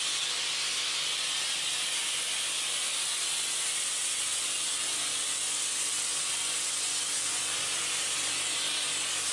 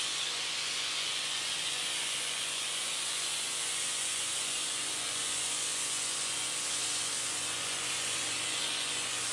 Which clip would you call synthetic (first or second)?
second